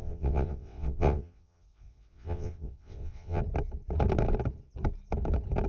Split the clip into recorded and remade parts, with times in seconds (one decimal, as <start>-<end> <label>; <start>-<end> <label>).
0.0-3.4 remade; 3.4-5.7 recorded